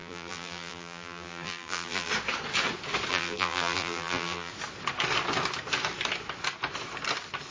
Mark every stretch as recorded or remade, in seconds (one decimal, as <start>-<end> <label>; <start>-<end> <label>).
0.0-2.1 remade; 2.1-3.1 recorded; 3.1-4.5 remade; 4.5-7.5 recorded